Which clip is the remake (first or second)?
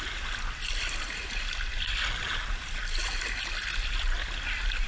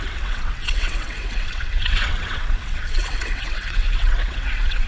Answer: second